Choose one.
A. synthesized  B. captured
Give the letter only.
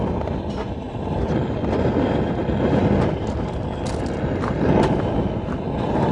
B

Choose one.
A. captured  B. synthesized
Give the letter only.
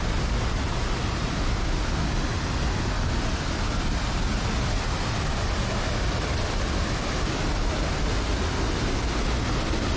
A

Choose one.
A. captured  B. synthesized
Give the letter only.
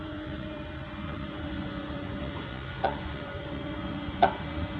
B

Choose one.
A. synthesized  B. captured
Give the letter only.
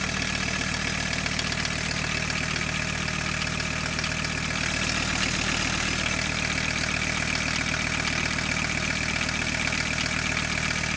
B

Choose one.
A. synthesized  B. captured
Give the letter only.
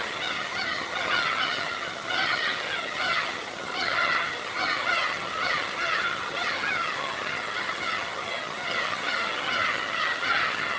A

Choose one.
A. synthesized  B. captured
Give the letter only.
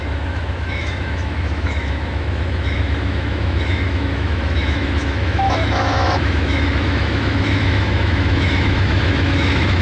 A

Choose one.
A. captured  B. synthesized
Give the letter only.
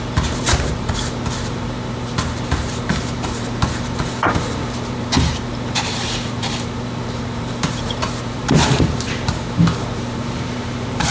B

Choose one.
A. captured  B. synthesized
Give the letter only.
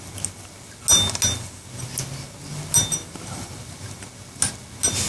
A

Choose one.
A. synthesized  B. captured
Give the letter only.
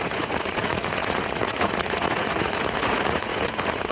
A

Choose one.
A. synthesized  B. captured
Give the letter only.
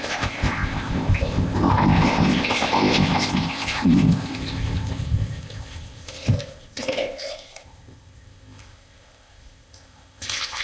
A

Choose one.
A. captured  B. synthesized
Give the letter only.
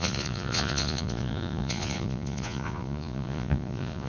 B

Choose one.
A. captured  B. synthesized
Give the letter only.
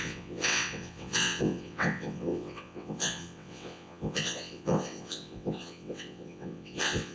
B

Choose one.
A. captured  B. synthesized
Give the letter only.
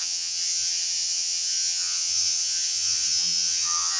B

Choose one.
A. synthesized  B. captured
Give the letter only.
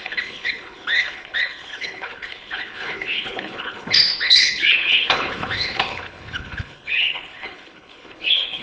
A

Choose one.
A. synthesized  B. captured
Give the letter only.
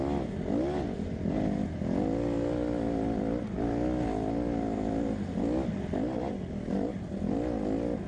B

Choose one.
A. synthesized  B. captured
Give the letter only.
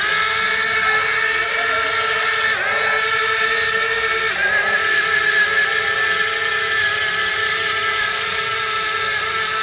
B